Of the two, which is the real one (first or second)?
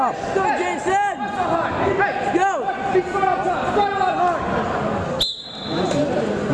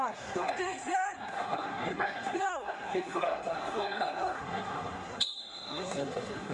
first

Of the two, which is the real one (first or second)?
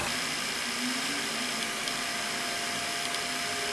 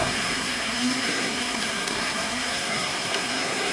first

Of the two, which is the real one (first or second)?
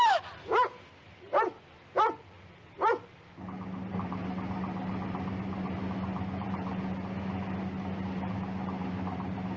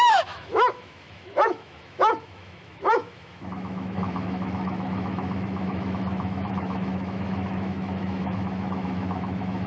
first